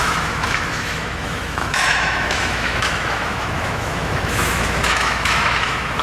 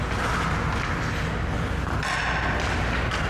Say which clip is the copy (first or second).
first